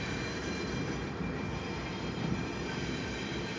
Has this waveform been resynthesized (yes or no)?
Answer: no